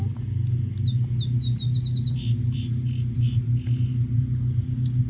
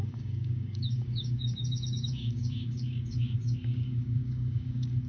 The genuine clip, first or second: first